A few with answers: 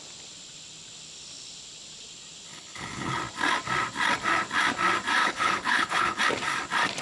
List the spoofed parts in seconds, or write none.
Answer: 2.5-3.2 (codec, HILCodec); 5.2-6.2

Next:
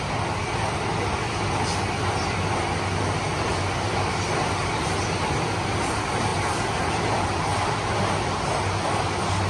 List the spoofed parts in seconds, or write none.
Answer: none

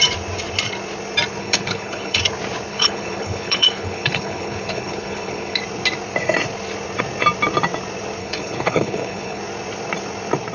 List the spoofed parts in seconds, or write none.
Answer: 1.4-2.2 (codec, HILCodec); 2.7-5.6; 8.2-9.4

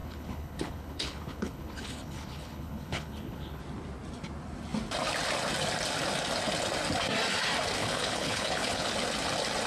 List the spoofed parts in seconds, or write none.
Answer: 0.0-3.6 (codec, HILCodec); 7.8-8.9

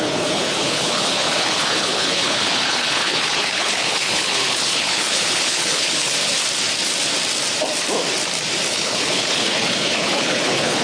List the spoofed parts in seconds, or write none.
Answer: 0.0-6.4 (codec, HILCodec); 8.7-10.8

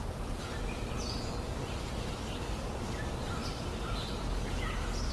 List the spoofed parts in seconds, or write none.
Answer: none

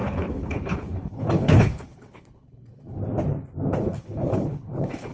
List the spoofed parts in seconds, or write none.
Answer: 0.0-3.0 (codec, HILCodec); 3.8-5.1

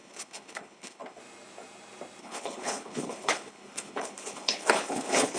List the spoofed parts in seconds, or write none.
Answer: 0.0-1.2 (codec, HILCodec); 2.2-5.4